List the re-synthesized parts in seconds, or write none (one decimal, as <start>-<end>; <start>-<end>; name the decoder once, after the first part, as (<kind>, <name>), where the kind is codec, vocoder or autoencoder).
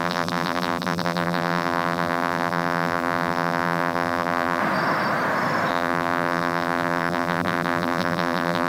0.0-4.6 (vocoder, BigVGAN v2); 5.7-8.7